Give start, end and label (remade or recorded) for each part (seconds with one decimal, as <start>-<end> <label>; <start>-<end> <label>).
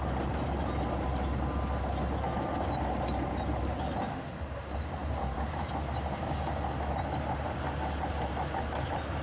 0.0-5.0 recorded; 5.0-5.7 remade; 5.7-9.2 recorded